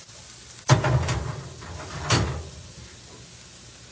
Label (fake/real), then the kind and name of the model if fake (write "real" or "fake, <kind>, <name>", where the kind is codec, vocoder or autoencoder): real